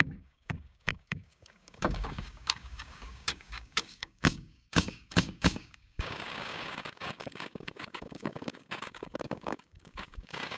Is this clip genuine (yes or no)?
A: no